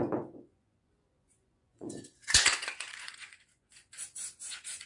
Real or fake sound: fake